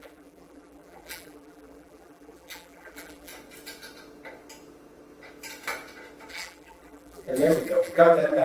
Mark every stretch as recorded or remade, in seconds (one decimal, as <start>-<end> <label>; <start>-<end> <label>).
0.0-3.3 remade; 3.3-6.3 recorded; 6.3-8.4 remade